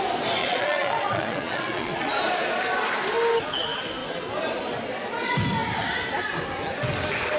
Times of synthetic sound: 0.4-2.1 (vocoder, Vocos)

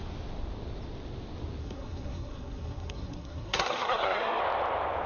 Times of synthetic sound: 1.6-4.4 (codec, SNAC)

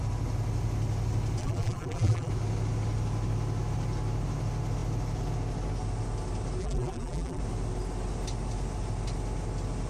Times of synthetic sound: 1.4-2.3 (vocoder, BigVGAN v2); 6.6-7.4